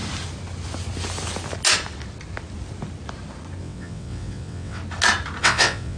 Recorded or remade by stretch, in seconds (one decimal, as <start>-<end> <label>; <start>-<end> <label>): 0.0-3.6 recorded; 3.6-4.8 remade; 4.8-5.4 recorded; 5.4-6.0 remade